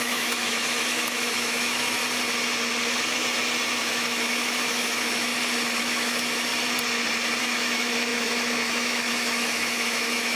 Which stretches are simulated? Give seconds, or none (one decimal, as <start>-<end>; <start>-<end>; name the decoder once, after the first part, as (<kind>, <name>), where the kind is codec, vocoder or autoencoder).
0.0-2.0 (autoencoder, DAC-VAE); 3.8-5.3; 5.8-6.5; 7.4-10.3